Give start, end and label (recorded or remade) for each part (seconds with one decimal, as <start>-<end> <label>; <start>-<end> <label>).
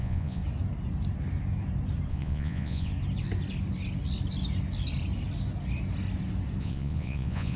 0.0-0.4 remade; 0.4-2.1 recorded; 2.1-2.9 remade; 2.9-6.6 recorded; 6.6-7.6 remade